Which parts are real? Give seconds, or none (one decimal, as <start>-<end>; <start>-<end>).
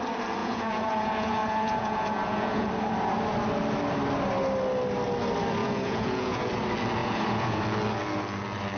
0.0-0.4; 2.7-5.6; 6.5-7.0; 7.6-8.8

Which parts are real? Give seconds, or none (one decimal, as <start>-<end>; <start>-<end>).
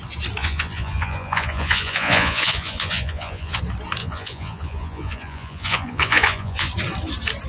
0.0-0.4; 3.6-4.0; 6.7-7.5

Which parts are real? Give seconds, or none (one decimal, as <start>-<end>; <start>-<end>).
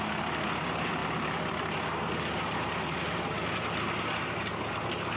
0.0-5.2